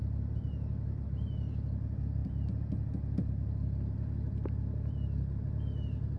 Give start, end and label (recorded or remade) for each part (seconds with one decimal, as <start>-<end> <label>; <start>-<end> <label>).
0.0-6.2 recorded